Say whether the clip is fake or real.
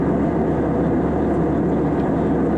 real